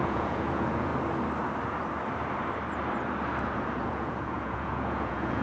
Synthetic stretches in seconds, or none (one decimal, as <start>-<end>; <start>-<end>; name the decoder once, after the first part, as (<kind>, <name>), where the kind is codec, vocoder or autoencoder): 0.0-0.9 (vocoder, Vocos); 3.7-5.4